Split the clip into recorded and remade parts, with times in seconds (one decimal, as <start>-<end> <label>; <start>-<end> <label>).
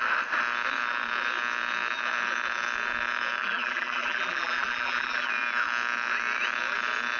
0.0-3.4 recorded; 3.4-5.3 remade; 5.3-7.2 recorded